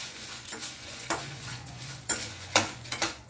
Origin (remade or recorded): remade